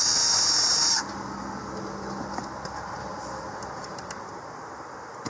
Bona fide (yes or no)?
yes